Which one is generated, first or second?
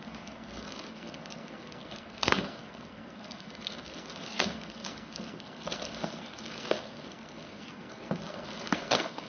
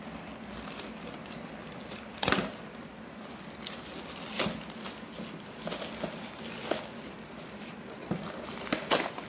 first